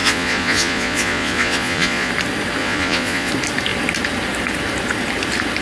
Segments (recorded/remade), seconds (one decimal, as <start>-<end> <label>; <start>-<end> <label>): 0.0-2.1 remade; 2.1-2.6 recorded; 2.6-3.3 remade; 3.3-5.6 recorded